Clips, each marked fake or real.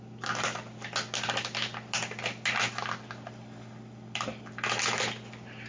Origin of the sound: real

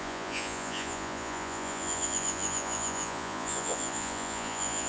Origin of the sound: fake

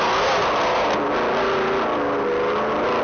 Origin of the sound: real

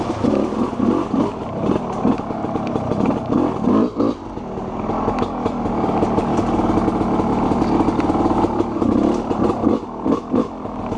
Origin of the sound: real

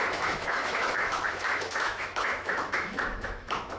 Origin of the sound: fake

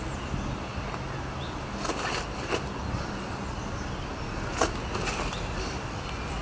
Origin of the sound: real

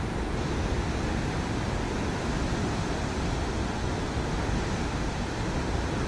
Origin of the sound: real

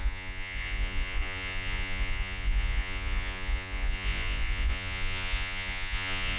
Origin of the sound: fake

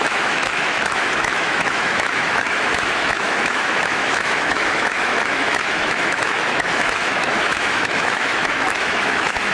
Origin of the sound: fake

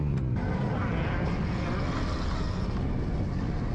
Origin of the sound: real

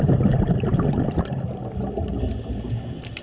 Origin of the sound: real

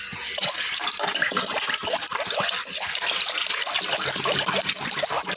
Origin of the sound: real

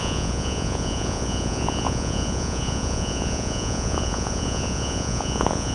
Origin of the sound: fake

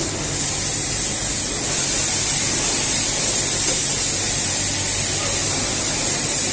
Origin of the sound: real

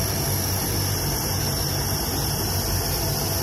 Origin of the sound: real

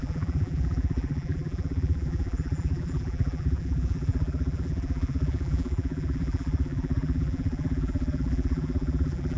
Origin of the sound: fake